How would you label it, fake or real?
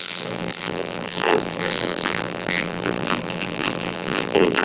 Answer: fake